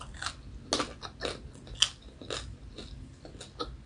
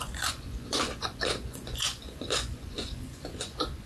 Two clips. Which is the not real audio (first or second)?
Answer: second